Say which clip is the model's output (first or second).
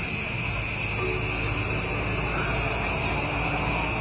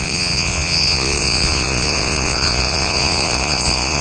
second